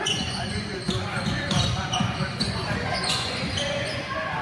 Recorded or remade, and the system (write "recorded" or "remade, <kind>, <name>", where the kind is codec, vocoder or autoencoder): remade, vocoder, Vocos